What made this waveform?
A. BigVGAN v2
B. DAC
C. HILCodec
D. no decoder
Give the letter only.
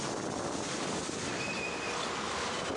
D